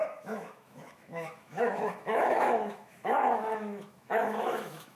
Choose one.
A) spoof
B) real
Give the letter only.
A